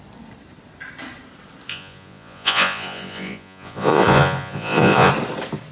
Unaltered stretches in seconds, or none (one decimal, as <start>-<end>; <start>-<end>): 0.0-1.7; 5.1-5.7